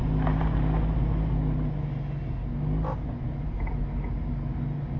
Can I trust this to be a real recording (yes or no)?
yes